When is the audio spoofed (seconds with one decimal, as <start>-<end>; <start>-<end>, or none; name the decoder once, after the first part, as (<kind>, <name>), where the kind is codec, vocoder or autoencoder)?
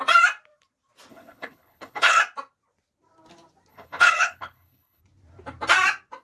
1.1-2.2 (codec, HILCodec); 3.7-5.0